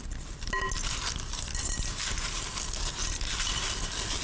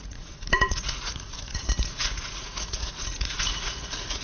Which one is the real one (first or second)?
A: first